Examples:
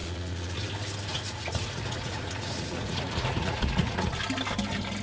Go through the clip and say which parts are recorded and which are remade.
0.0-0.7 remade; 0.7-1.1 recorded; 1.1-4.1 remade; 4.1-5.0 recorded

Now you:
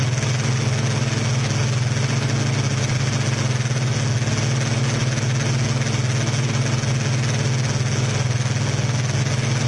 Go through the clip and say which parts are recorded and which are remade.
0.0-9.7 recorded

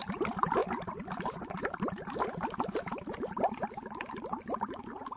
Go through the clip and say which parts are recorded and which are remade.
0.0-3.6 remade; 3.6-4.4 recorded; 4.4-5.2 remade

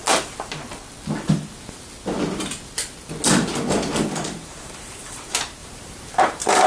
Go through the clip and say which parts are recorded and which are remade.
0.0-4.0 recorded; 4.0-6.7 remade

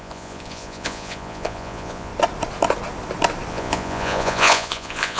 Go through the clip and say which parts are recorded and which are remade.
0.0-2.1 remade; 2.1-3.5 recorded; 3.5-5.2 remade

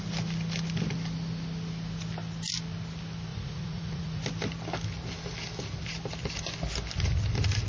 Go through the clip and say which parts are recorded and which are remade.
0.0-3.3 recorded; 3.3-4.2 remade; 4.2-7.7 recorded